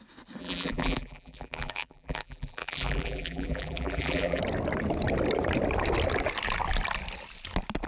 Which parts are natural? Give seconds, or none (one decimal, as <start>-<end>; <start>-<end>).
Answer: 0.0-0.4; 4.4-7.9